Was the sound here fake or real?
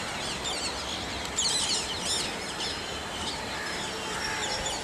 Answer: real